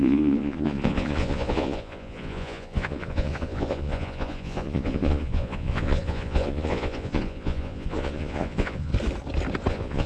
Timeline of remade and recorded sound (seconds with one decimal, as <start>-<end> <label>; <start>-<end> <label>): 0.0-8.9 remade; 8.9-9.7 recorded; 9.7-10.1 remade